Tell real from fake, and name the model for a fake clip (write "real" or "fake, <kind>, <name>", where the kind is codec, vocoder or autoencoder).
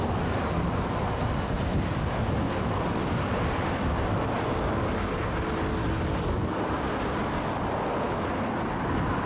real